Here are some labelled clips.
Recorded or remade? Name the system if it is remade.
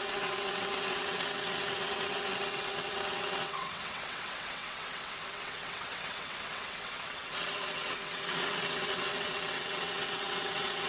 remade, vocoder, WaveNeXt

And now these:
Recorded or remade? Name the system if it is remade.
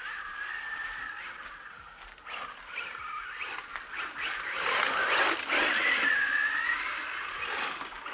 recorded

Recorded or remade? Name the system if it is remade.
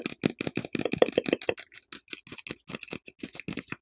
recorded